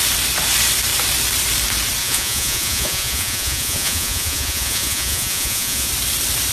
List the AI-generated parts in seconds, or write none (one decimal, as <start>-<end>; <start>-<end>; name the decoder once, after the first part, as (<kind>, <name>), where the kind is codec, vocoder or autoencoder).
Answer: 2.0-5.9 (vocoder, Vocos)

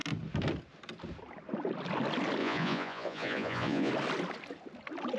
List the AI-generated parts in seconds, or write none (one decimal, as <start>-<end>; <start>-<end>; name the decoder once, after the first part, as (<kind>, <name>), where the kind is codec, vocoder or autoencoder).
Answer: 2.4-3.9 (vocoder, Vocos)

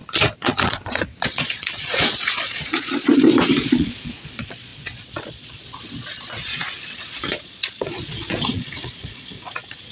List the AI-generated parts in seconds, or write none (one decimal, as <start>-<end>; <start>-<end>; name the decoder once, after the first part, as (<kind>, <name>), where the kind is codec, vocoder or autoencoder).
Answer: 0.0-9.9 (vocoder, Vocos)

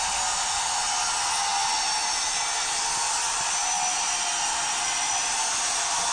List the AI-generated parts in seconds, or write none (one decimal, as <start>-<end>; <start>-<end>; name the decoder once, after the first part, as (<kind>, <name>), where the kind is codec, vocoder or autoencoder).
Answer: none

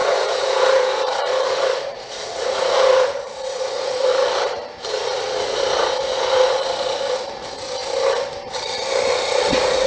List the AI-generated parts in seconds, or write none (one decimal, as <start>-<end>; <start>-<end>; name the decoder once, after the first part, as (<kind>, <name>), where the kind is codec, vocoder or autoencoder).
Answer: 0.0-4.1 (vocoder, Vocos); 4.9-7.8; 9.5-9.9

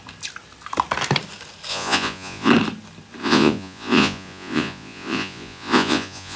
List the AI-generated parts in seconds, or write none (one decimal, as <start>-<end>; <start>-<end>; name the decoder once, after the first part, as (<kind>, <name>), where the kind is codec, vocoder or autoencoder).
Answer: 1.7-2.5 (vocoder, Vocos); 3.2-6.4